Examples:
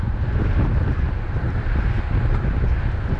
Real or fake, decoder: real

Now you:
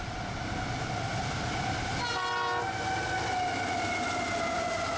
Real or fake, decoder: real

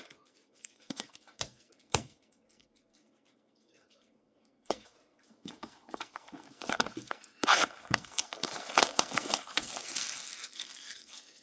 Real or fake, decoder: fake, codec, SNAC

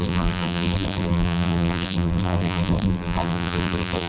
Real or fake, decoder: fake, vocoder, BigVGAN v2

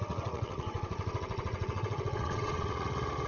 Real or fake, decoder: fake, vocoder, WaveNeXt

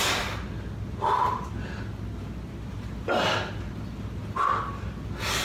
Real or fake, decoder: real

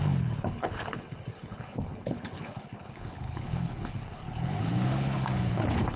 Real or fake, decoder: fake, codec, HILCodec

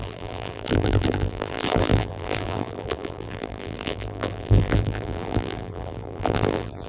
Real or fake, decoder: fake, vocoder, BigVGAN v2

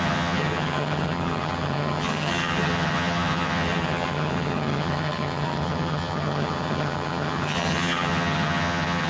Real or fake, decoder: fake, vocoder, HiFi-GAN